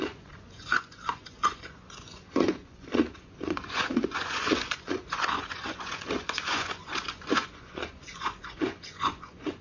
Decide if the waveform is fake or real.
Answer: fake